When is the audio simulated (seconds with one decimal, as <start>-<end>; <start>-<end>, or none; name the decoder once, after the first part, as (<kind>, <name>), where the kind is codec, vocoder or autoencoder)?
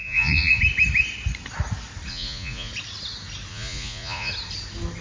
0.0-0.6 (vocoder, Vocos); 2.1-2.7; 3.5-4.3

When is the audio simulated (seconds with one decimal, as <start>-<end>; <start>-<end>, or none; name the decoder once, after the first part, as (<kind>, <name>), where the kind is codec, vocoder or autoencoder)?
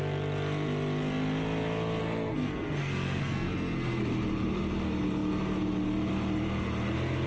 2.0-4.0 (codec, SNAC)